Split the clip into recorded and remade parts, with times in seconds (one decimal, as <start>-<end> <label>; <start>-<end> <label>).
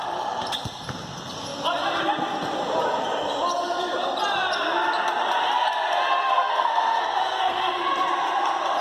0.0-6.2 recorded; 6.2-7.8 remade; 7.8-8.8 recorded